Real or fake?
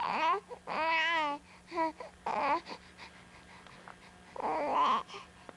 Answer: real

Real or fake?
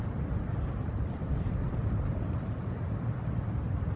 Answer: fake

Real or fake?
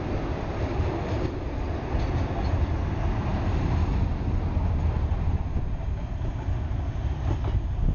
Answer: real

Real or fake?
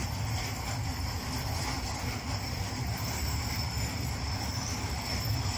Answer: real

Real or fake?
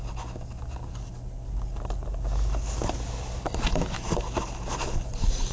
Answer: real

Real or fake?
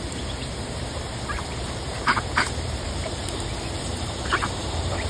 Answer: fake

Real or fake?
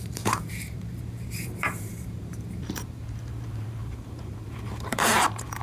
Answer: fake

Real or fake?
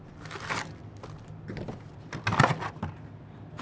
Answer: real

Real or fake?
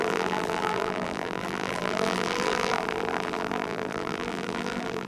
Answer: fake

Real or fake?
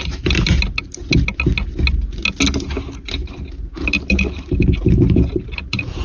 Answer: real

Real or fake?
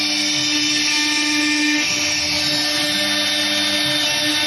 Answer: real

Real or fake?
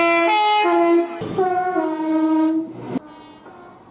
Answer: real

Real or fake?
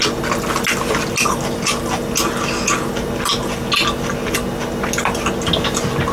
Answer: real